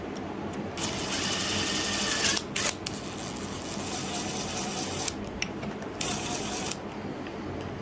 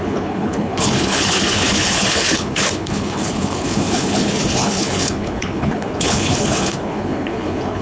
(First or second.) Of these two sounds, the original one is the first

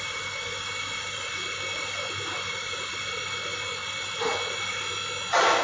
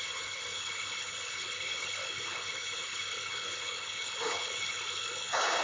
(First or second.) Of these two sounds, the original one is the first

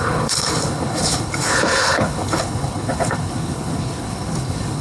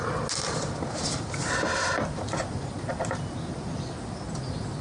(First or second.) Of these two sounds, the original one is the second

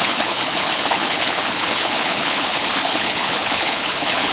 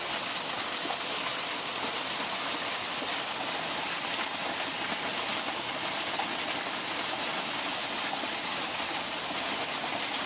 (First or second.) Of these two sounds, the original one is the second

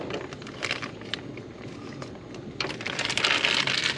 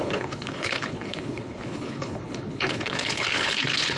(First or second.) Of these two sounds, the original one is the first